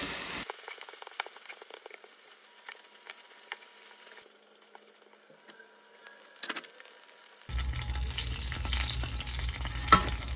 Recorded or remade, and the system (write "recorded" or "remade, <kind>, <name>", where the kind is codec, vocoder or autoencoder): recorded